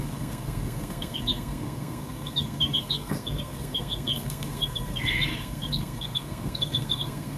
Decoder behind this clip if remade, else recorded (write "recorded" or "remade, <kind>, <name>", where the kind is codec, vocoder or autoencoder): remade, codec, SNAC